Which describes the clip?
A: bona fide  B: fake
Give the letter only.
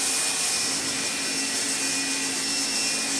A